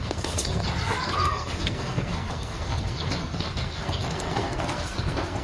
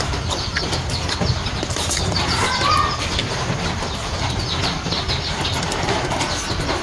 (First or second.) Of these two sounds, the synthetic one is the first